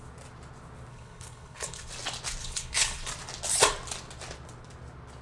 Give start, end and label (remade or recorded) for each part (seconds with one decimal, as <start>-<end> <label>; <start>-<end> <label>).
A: 0.0-0.9 recorded; 0.9-1.9 remade; 1.9-2.4 recorded; 2.4-3.1 remade; 3.1-5.2 recorded